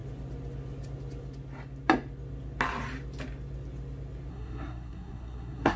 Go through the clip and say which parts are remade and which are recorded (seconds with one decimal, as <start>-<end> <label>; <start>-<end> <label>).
0.0-4.3 recorded; 4.3-5.8 remade